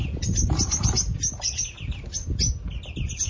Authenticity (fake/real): real